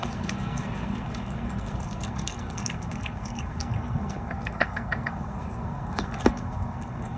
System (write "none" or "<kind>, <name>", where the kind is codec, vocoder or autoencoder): codec, SNAC